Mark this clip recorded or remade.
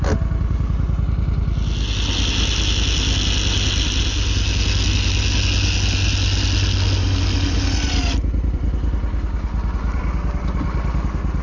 recorded